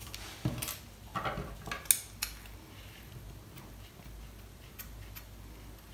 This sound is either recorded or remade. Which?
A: recorded